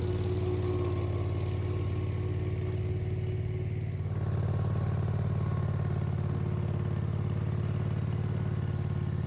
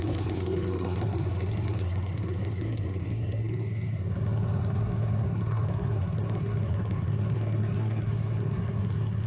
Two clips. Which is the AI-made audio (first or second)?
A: second